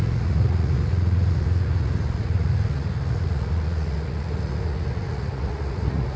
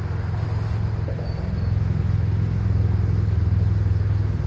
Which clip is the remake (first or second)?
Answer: first